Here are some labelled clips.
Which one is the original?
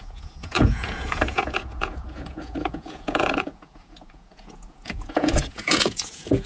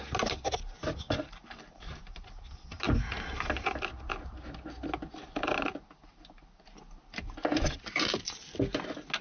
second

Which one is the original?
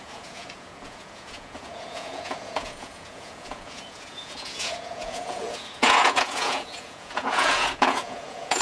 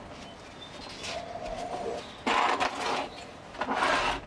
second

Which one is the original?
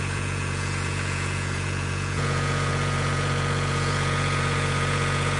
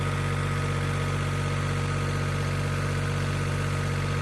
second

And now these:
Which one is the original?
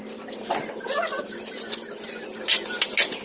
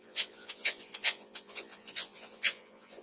first